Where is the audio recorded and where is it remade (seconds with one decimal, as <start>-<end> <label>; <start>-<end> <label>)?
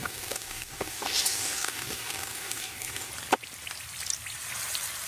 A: 0.0-3.1 remade; 3.1-5.1 recorded